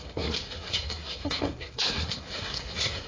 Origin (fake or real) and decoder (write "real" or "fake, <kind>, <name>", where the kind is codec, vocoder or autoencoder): fake, codec, SNAC